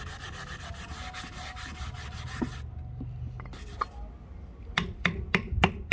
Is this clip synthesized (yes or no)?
no